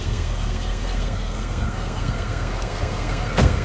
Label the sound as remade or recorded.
remade